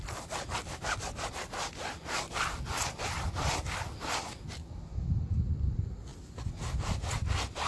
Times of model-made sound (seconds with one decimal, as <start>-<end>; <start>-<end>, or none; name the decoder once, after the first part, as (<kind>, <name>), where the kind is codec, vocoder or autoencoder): none